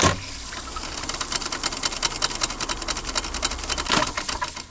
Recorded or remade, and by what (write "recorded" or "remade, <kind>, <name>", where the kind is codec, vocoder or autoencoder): recorded